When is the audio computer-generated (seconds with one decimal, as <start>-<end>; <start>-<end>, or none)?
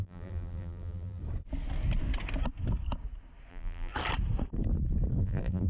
0.0-1.2; 3.5-3.9; 5.2-5.7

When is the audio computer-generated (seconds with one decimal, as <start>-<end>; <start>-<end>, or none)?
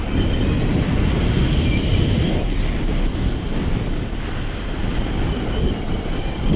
none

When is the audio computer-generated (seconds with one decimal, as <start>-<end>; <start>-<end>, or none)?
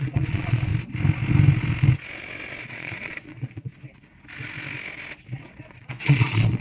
0.0-0.7; 2.6-3.7; 5.7-6.6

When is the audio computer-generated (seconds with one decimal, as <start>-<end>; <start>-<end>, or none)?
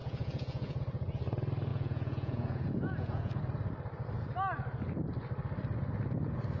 0.0-0.8; 1.7-3.4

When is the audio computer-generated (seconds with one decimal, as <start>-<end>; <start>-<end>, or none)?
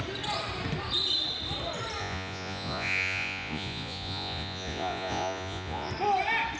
2.0-5.9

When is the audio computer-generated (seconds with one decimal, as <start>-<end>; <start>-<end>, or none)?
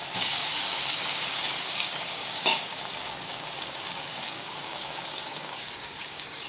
0.0-6.5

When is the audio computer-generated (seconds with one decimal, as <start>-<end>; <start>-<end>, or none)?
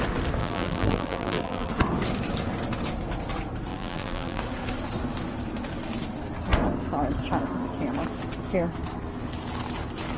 0.4-1.7; 3.7-4.4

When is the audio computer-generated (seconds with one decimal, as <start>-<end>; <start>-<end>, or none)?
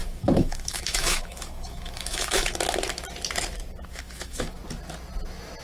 0.0-2.5; 3.9-4.6